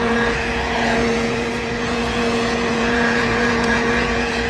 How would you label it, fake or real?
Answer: fake